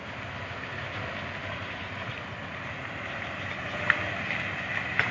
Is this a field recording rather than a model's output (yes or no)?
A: yes